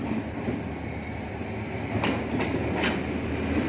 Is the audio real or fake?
real